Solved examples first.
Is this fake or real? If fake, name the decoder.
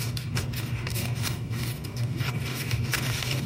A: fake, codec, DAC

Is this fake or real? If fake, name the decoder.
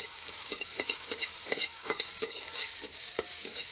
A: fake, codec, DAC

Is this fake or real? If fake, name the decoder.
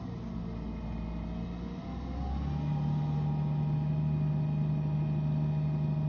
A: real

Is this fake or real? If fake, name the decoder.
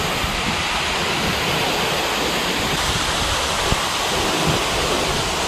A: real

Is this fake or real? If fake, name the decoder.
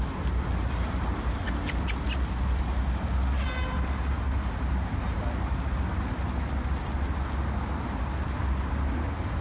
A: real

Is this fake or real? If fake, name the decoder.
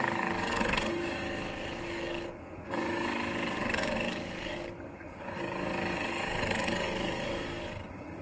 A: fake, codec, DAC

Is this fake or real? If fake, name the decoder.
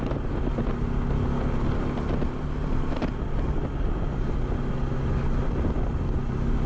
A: real